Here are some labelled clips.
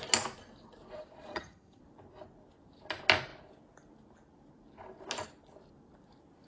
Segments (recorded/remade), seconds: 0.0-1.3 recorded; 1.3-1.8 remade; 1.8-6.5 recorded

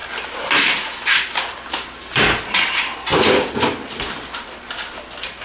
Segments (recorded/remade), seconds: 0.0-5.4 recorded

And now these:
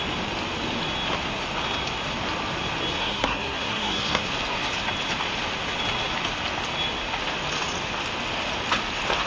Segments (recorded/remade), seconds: 0.0-3.0 recorded; 3.0-4.3 remade; 4.3-9.3 recorded

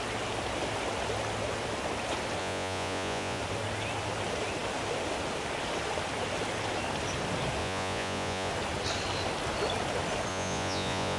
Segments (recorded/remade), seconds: 0.0-2.4 recorded; 2.4-3.4 remade; 3.4-7.6 recorded; 7.6-8.5 remade; 8.5-10.3 recorded; 10.3-11.2 remade

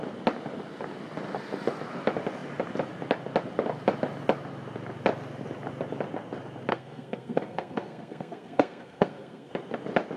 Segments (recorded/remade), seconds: 0.0-6.7 recorded; 6.7-9.5 remade; 9.5-10.2 recorded

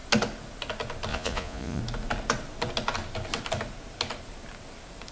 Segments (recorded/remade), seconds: 0.0-1.1 recorded; 1.1-1.8 remade; 1.8-5.1 recorded

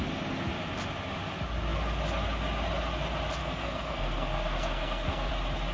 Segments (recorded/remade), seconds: 0.0-3.4 recorded; 3.4-5.3 remade; 5.3-5.7 recorded

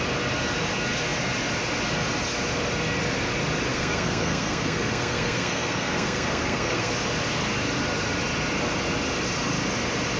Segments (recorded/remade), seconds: 0.0-3.7 recorded; 3.7-6.9 remade; 6.9-10.2 recorded